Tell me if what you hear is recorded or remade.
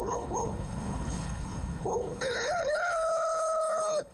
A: remade